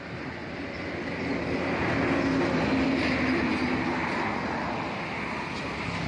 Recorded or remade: recorded